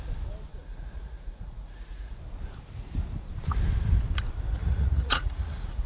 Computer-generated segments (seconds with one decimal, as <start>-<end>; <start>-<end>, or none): 0.5-2.2; 4.6-5.9